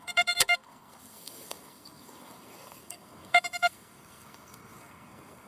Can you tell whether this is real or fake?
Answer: fake